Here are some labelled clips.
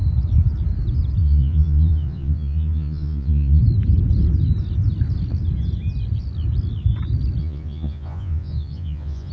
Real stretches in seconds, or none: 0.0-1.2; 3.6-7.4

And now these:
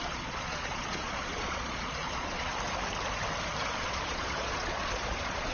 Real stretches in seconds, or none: 2.5-3.7

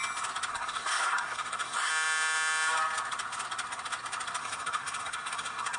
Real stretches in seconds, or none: 0.0-0.5; 1.9-4.4

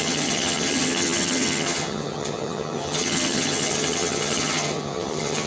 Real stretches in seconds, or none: none

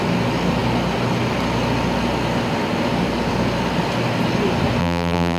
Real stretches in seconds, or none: 0.0-4.8